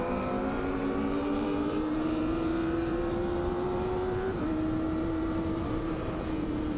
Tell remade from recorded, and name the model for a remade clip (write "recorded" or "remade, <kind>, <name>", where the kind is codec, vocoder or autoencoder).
remade, vocoder, BigVGAN v2